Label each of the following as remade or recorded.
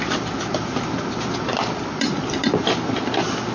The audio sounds recorded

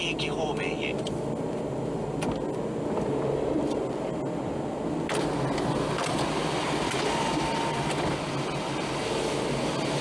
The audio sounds recorded